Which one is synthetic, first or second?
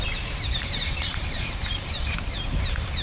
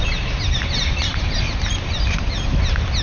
first